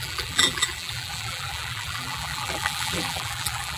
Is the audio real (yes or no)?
no